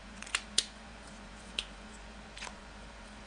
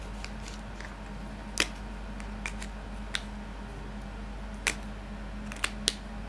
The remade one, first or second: first